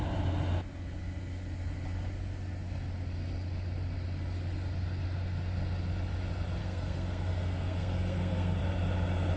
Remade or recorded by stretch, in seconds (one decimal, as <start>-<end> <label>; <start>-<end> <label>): 0.0-6.6 recorded; 6.6-8.6 remade; 8.6-9.4 recorded